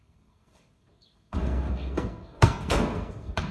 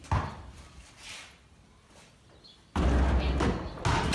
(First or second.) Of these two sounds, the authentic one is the second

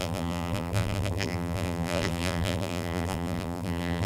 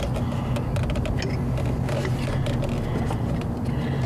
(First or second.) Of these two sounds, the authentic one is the second